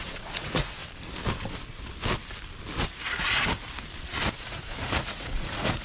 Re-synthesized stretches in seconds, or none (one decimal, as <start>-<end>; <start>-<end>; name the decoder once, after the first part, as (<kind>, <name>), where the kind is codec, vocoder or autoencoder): 0.0-0.8 (vocoder, Vocos); 4.3-5.8

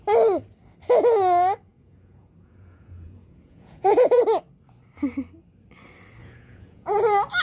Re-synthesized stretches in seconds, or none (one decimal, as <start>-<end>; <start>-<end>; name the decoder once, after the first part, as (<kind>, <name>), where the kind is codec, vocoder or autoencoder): 1.7-4.2 (vocoder, Vocos); 6.2-7.0